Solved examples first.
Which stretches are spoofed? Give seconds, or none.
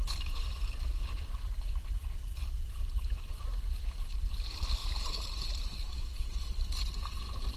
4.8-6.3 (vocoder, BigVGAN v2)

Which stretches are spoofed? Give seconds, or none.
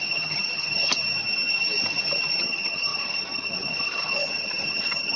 0.0-0.9 (vocoder, HiFi-GAN); 2.4-5.2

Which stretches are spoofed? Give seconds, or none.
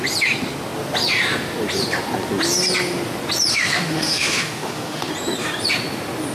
3.5-5.1 (autoencoder, DAC-VAE)